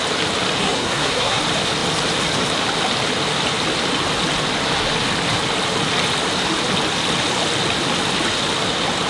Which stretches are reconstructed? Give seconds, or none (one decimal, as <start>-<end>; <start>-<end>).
0.6-1.4